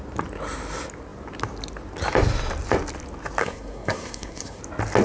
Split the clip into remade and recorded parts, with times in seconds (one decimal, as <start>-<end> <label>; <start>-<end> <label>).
0.0-3.4 recorded; 3.4-4.6 remade; 4.6-5.0 recorded